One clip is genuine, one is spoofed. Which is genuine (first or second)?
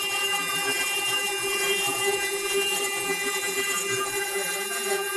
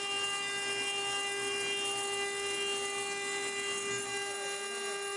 second